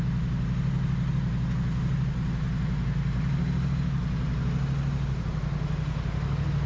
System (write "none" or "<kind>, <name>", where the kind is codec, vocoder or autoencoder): none